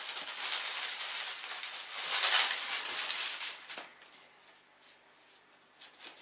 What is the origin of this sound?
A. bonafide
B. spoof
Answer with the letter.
A